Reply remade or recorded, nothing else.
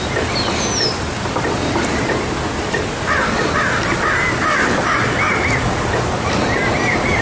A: recorded